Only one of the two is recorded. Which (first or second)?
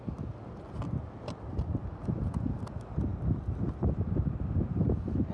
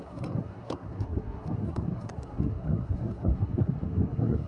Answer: first